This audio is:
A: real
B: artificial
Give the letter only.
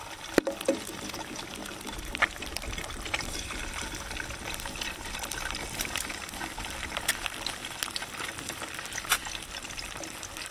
A